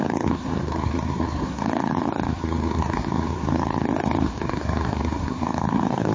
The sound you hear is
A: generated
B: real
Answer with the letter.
A